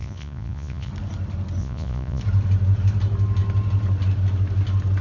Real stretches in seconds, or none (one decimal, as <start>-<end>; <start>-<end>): 0.9-1.6; 2.2-5.0